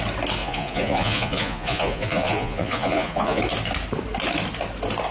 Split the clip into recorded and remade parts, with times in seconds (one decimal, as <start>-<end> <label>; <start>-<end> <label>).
0.0-0.4 recorded; 0.4-3.4 remade; 3.4-5.1 recorded